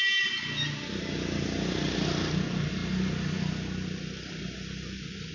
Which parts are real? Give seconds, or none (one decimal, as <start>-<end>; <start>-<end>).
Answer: 0.0-5.3